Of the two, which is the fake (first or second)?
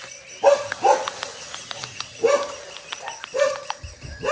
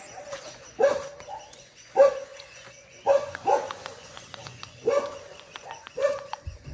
second